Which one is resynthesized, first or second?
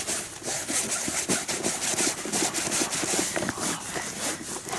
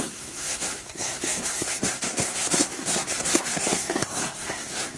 second